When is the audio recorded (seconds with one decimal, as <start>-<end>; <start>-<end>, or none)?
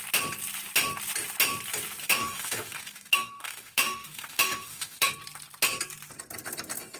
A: 0.0-2.0; 5.1-7.0